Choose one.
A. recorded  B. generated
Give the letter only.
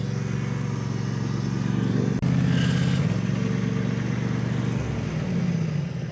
A